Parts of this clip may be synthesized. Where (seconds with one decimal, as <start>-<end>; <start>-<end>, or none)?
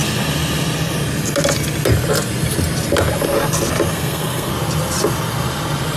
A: 3.9-4.5